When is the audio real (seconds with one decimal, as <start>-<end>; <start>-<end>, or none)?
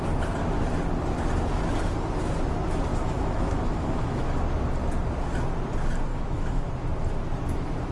0.0-2.9; 4.4-6.1; 6.7-7.9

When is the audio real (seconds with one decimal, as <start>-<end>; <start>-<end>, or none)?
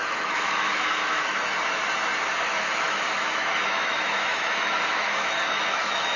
1.4-2.5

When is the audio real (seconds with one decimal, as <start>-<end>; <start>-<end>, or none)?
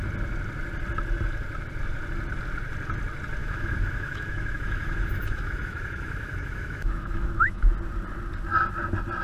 0.0-3.4; 7.7-9.2